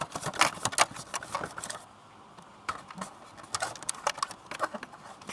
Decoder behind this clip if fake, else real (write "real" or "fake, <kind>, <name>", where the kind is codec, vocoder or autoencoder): real